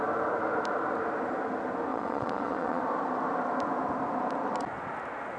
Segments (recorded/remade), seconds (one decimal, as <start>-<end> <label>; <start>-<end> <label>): 0.0-1.9 recorded; 1.9-2.8 remade; 2.8-5.4 recorded